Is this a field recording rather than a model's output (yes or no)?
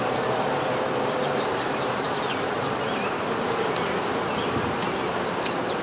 no